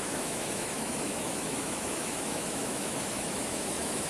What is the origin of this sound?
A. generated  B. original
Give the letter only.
A